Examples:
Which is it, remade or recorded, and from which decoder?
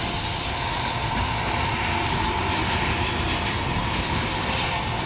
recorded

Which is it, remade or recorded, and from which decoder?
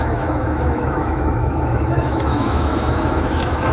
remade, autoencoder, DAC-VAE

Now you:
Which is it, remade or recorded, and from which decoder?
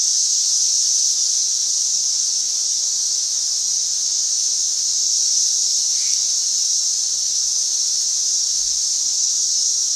remade, autoencoder, DAC-VAE